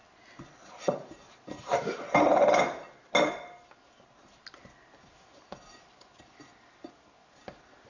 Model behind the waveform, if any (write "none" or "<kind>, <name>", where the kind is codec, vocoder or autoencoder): none